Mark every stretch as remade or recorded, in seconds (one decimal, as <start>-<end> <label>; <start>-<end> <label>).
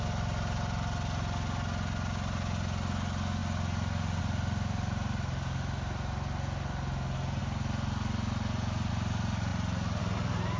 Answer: 0.0-10.6 recorded